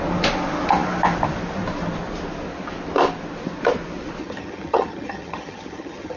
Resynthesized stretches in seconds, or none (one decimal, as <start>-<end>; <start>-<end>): 4.2-6.2